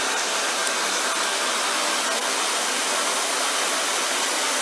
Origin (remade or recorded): recorded